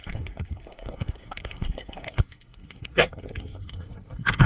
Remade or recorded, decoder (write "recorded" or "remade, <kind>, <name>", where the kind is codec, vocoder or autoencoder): remade, codec, SNAC